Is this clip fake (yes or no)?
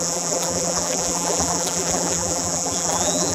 yes